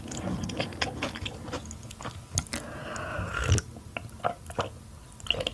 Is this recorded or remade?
recorded